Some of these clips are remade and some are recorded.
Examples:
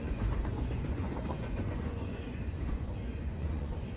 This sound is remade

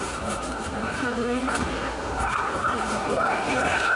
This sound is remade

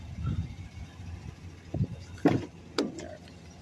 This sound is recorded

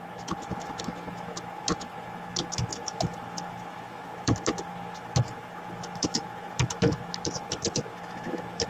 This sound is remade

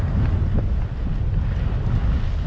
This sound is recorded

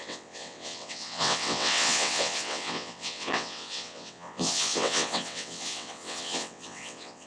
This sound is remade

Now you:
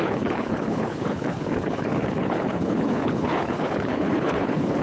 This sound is remade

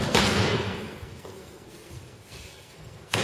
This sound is remade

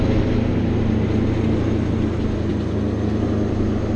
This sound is recorded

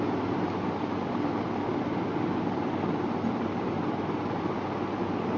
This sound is recorded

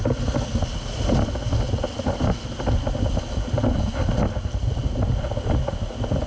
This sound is recorded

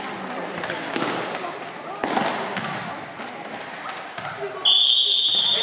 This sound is recorded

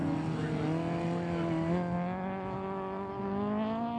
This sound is recorded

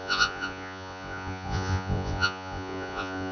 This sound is remade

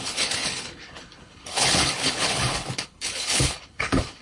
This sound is remade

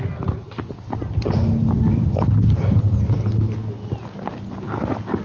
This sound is recorded